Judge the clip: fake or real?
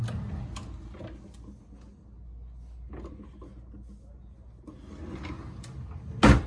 real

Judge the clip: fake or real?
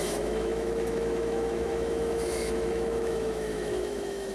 fake